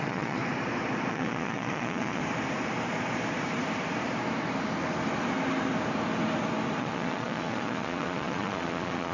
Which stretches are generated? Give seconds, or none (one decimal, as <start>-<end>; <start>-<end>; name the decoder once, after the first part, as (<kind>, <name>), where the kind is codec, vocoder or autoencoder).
0.0-0.4 (vocoder, Vocos); 1.1-2.2; 6.8-9.1